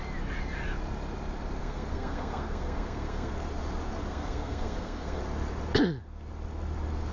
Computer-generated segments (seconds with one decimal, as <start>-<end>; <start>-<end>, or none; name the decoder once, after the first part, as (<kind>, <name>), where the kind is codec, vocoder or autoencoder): 1.6-3.3 (codec, SNAC); 4.1-5.2